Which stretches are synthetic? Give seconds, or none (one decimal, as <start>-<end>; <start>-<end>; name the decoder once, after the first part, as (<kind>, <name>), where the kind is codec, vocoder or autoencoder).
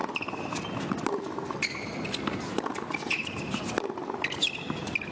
none